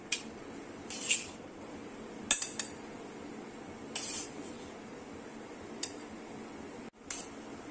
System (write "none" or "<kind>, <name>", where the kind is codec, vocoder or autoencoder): none